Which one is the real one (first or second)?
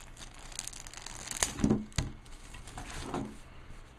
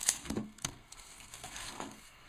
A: first